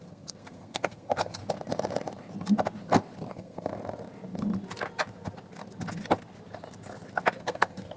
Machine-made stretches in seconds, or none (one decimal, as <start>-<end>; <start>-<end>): 0.0-1.4; 3.3-3.7; 7.4-8.0